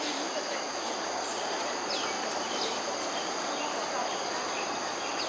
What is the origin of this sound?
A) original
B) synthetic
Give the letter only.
B